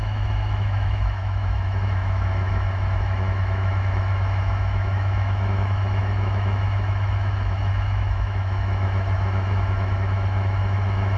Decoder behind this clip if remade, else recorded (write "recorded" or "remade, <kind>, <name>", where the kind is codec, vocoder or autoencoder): remade, autoencoder, DAC-VAE